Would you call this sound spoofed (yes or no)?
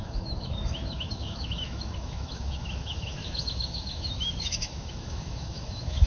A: yes